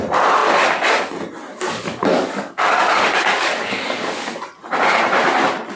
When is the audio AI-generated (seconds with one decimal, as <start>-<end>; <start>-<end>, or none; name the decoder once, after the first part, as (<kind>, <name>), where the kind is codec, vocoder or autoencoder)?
1.5-4.4 (codec, DAC)